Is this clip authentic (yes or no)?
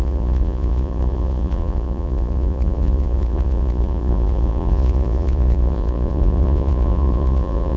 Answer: no